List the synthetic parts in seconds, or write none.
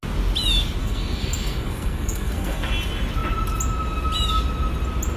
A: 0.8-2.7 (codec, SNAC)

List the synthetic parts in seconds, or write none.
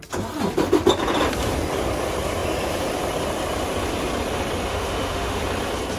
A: 4.7-5.4 (autoencoder, DAC-VAE)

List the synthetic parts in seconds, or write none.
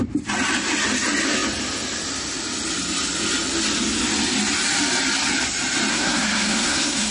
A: 5.9-7.1 (codec, SNAC)